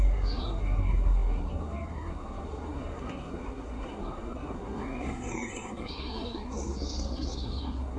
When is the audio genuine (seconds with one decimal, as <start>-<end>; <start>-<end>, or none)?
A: none